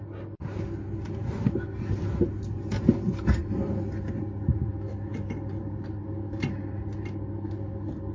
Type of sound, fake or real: real